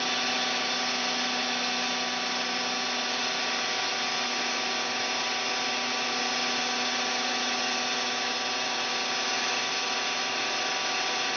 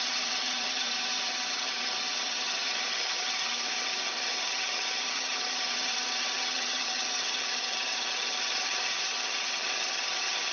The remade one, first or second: second